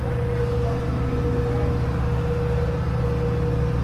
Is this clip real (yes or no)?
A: yes